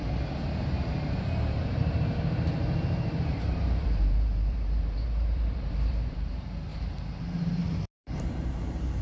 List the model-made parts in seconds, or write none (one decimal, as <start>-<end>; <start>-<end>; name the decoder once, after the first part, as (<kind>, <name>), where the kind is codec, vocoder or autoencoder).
0.0-6.7 (vocoder, BigVGAN v2); 7.2-9.0